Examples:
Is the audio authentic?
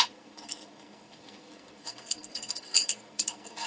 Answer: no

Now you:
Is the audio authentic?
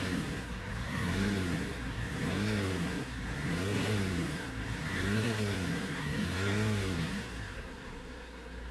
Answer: no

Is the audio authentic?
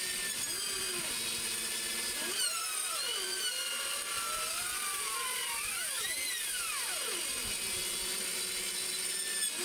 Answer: yes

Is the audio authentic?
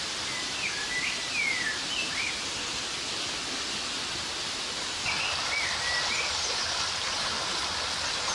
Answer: yes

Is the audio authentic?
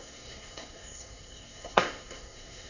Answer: no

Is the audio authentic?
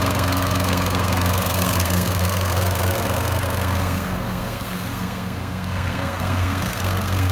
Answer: no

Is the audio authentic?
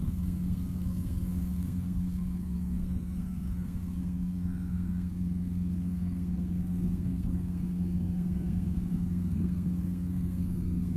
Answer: no